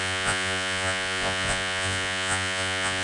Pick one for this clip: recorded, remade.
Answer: remade